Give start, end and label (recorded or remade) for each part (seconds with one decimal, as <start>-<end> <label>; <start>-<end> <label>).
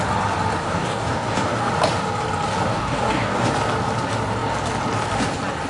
0.0-0.6 recorded; 0.6-1.7 remade; 1.7-2.7 recorded; 2.7-3.5 remade; 3.5-5.7 recorded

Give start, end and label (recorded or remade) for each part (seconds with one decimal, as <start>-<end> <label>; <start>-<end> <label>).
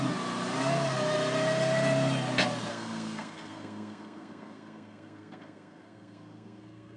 0.0-2.7 recorded; 2.7-7.0 remade